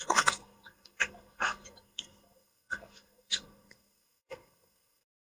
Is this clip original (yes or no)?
no